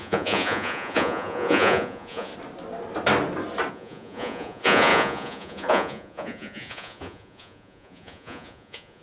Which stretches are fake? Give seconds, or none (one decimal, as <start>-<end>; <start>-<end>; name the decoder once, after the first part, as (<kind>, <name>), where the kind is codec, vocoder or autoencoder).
0.0-2.3 (vocoder, Vocos); 3.7-9.0